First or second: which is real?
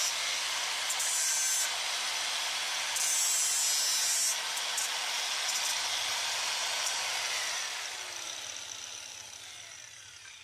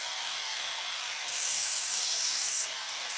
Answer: first